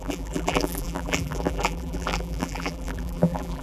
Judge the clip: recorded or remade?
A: remade